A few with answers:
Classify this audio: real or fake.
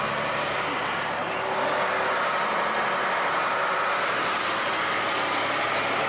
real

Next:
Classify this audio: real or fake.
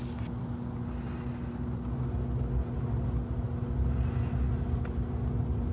real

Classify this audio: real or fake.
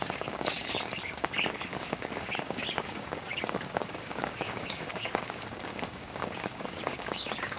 fake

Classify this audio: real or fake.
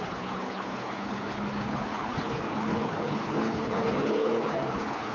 fake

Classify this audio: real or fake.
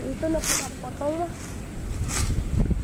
real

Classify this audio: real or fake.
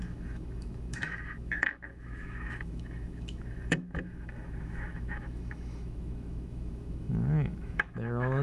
fake